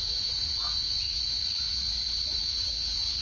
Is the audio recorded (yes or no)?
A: no